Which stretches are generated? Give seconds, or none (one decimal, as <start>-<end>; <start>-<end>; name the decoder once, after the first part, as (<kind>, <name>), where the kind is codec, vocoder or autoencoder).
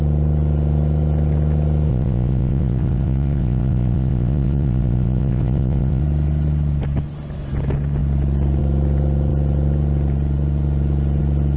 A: 1.9-6.0 (vocoder, WaveNeXt)